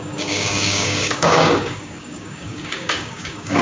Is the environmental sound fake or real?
fake